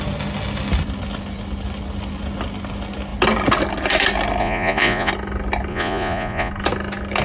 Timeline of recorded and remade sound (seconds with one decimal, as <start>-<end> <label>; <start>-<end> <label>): 0.0-4.4 recorded; 4.4-5.1 remade; 5.1-5.7 recorded; 5.7-6.5 remade; 6.5-7.2 recorded